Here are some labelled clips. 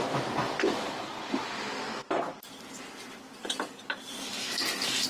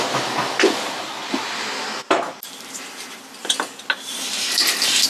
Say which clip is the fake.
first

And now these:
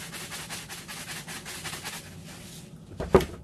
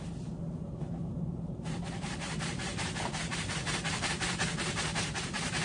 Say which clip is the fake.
second